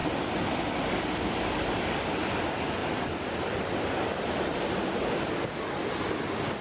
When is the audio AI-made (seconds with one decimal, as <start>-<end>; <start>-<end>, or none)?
0.0-1.8; 2.8-5.7

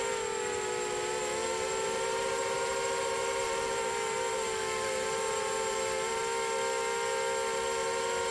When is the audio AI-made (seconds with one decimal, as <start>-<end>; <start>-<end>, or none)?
1.4-6.2